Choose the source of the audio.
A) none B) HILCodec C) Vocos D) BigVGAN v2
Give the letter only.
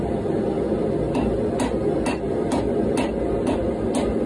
A